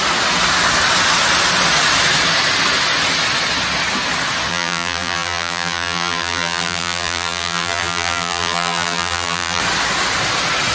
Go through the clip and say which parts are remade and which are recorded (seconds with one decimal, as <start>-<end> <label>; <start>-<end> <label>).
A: 0.0-4.5 recorded; 4.5-9.6 remade; 9.6-10.7 recorded